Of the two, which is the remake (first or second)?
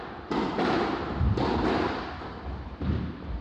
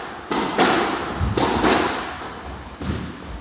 first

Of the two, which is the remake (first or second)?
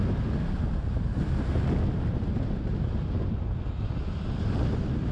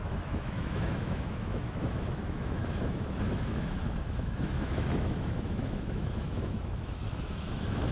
second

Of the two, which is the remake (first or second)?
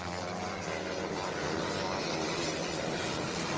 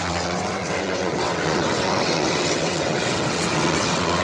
second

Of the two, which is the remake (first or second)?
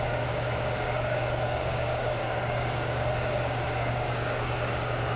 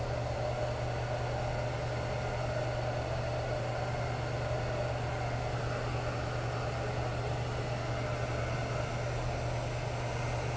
first